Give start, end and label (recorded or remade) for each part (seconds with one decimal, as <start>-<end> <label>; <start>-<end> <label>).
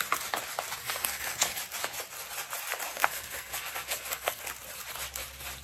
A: 0.0-0.8 recorded; 0.8-1.6 remade; 1.6-2.9 recorded; 2.9-4.4 remade; 4.4-5.6 recorded